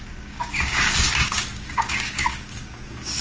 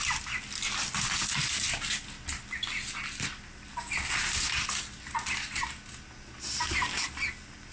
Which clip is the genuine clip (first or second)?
second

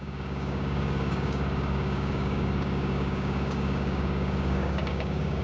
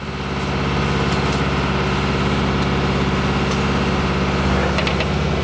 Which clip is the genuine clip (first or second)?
second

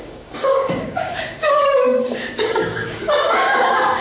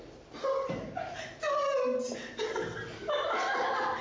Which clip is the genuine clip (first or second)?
second